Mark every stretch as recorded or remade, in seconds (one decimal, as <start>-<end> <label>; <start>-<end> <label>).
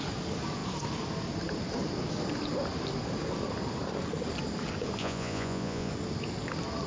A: 0.0-5.0 recorded; 5.0-5.9 remade; 5.9-6.9 recorded